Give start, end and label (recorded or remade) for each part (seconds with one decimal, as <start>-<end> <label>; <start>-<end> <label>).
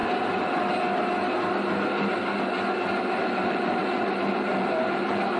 0.0-3.2 recorded; 3.2-5.4 remade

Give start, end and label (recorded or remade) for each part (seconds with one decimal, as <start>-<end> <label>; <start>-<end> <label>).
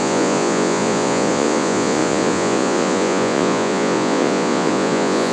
0.0-5.3 remade